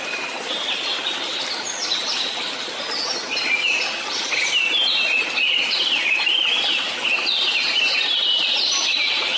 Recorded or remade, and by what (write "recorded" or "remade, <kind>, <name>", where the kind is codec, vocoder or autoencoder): recorded